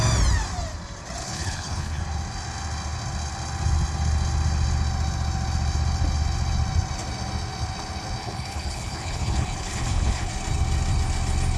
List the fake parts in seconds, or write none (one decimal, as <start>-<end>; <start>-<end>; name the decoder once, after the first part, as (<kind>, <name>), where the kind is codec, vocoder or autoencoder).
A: 1.2-2.0 (codec, HILCodec); 8.2-10.3